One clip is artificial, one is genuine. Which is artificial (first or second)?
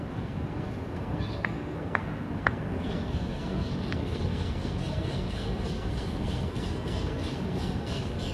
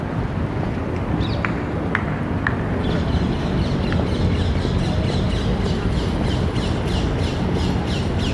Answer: first